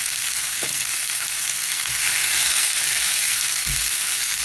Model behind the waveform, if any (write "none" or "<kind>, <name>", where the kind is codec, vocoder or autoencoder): codec, SNAC